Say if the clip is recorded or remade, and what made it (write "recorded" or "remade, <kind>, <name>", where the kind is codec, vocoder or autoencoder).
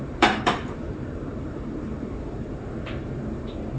remade, vocoder, BigVGAN v2